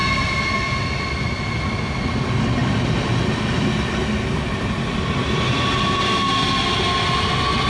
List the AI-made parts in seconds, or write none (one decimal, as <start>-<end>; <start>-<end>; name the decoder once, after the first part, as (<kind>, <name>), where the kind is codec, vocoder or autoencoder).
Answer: none